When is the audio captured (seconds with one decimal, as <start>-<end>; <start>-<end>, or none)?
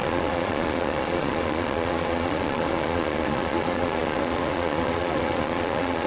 none